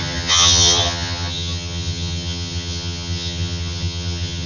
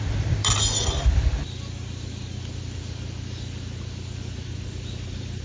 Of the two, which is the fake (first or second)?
first